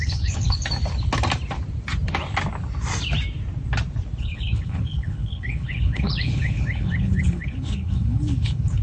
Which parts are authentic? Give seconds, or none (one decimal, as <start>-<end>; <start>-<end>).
0.6-4.2